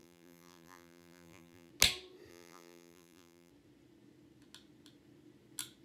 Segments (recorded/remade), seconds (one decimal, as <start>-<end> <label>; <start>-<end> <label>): 0.0-1.7 remade; 1.7-2.3 recorded; 2.3-3.5 remade; 3.5-5.8 recorded